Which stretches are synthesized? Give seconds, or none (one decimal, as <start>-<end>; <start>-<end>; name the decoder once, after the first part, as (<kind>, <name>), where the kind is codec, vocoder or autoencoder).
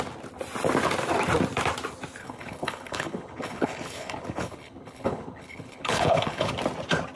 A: 2.2-6.5 (codec, HILCodec)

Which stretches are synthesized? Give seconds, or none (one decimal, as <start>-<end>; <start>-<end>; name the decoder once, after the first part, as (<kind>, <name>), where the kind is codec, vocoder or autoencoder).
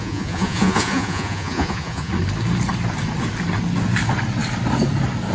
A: 0.0-2.1 (vocoder, Vocos)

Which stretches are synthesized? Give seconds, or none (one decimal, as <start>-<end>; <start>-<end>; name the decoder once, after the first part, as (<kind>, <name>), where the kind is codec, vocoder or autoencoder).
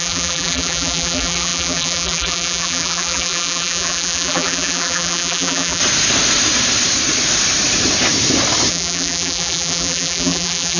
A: 0.0-5.8 (vocoder, BigVGAN v2); 8.7-10.8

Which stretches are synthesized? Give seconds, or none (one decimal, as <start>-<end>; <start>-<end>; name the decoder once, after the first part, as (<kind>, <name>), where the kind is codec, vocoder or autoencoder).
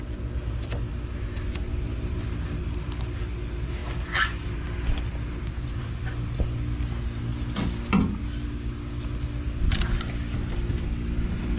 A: none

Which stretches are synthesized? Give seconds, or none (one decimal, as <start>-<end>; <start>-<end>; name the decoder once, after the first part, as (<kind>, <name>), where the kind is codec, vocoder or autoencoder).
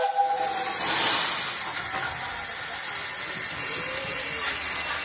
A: none